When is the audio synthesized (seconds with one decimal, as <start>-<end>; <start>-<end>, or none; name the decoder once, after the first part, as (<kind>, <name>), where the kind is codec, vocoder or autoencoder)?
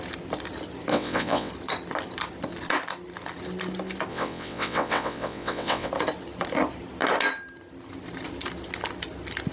0.9-1.5 (vocoder, WaveNeXt); 4.1-5.9